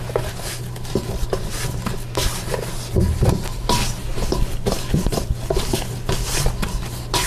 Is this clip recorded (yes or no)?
yes